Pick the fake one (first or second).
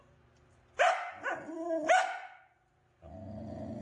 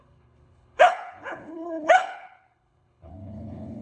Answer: second